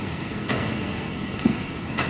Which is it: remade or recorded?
remade